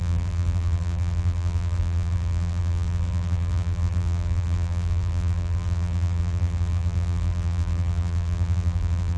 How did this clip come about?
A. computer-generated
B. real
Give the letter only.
A